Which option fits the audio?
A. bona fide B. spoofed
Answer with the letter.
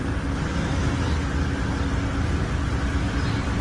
A